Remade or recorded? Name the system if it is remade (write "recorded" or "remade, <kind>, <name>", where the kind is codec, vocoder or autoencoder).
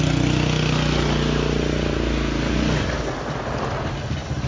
recorded